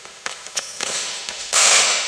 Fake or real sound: fake